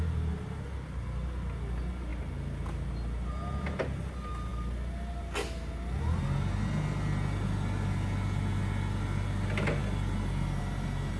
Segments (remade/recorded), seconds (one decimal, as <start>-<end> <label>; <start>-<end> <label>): 0.0-11.2 recorded